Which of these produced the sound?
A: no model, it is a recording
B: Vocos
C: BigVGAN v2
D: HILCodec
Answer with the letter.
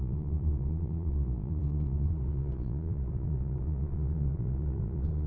B